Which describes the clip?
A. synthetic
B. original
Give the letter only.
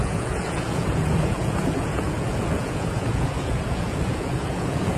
A